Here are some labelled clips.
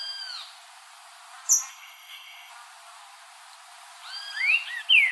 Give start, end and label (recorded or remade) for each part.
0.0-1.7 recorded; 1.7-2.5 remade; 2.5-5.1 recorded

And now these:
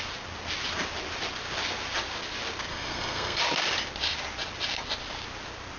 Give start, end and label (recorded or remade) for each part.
0.0-2.7 recorded; 2.7-3.4 remade; 3.4-5.8 recorded

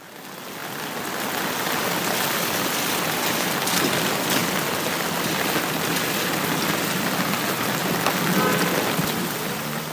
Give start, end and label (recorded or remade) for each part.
0.0-9.9 recorded

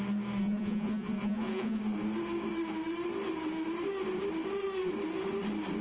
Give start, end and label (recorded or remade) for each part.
0.0-0.4 recorded; 0.4-1.8 remade; 1.8-5.8 recorded

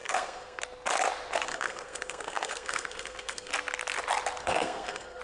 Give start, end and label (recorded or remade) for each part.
0.0-0.6 remade; 0.6-1.5 recorded; 1.5-3.5 remade; 3.5-4.4 recorded; 4.4-5.2 remade